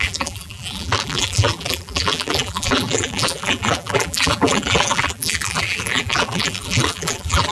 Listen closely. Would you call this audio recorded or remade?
remade